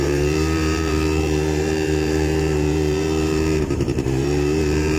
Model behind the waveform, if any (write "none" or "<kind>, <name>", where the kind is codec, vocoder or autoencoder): vocoder, BigVGAN v2